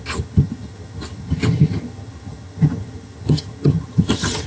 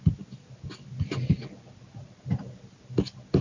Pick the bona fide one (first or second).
second